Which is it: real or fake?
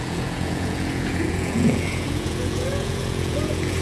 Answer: fake